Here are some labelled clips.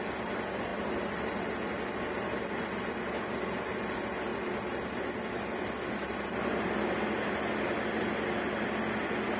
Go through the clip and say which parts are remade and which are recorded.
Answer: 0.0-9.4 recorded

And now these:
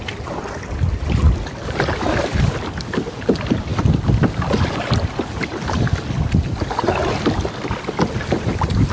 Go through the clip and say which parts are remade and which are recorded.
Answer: 0.0-8.9 recorded

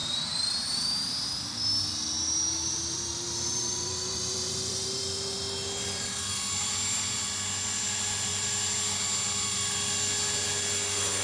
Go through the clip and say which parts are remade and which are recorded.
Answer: 0.0-0.9 remade; 0.9-2.7 recorded; 2.7-5.0 remade; 5.0-11.2 recorded

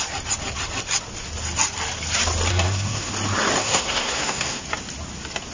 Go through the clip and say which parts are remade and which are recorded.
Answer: 0.0-2.5 recorded; 2.5-3.1 remade; 3.1-3.6 recorded; 3.6-4.6 remade; 4.6-5.5 recorded

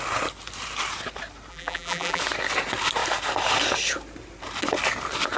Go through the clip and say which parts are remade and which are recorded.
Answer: 0.0-1.5 recorded; 1.5-2.2 remade; 2.2-5.4 recorded

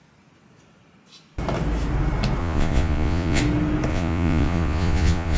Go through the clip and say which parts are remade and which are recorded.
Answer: 0.0-2.4 recorded; 2.4-3.4 remade; 3.4-3.9 recorded; 3.9-5.4 remade

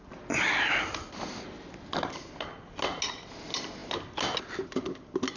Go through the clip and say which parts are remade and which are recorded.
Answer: 0.0-5.4 recorded